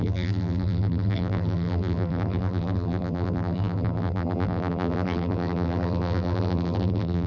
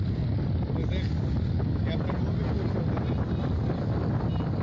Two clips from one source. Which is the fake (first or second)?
first